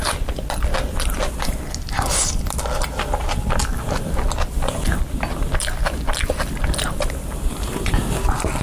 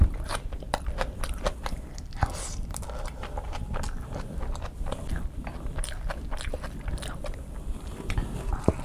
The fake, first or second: second